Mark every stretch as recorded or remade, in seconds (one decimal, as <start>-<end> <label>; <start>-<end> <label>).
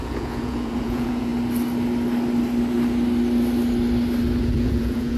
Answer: 0.0-1.3 remade; 1.3-4.4 recorded; 4.4-5.2 remade